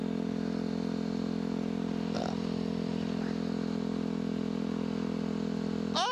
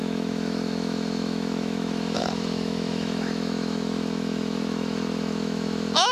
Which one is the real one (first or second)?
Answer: first